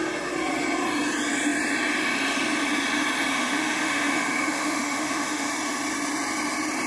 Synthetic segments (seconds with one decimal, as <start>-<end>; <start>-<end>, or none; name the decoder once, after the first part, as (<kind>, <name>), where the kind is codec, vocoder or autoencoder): 3.3-5.5 (autoencoder, DAC-VAE)